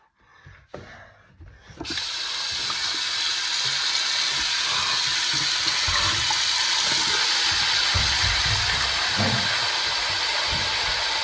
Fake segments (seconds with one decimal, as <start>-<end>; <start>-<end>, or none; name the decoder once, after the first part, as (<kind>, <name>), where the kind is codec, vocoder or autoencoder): none